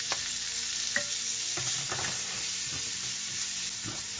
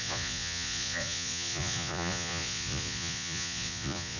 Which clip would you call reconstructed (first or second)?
second